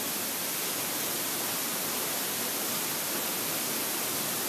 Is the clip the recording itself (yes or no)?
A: yes